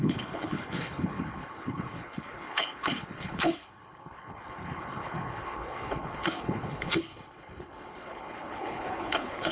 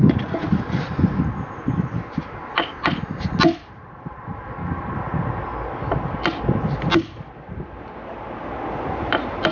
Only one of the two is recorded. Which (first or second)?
second